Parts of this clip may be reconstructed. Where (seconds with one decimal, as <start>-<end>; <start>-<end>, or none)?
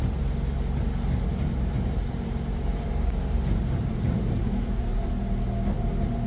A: 1.3-5.1